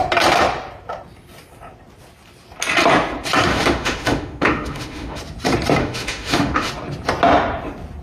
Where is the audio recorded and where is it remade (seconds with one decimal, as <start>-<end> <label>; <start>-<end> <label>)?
0.0-3.5 recorded; 3.5-5.2 remade; 5.2-5.8 recorded; 5.8-6.7 remade; 6.7-8.0 recorded